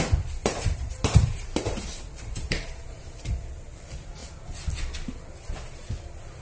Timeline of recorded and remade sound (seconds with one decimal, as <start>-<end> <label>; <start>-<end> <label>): 0.0-0.4 recorded; 0.4-3.3 remade; 3.3-6.4 recorded